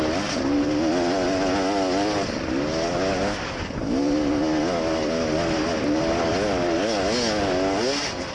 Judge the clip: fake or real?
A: real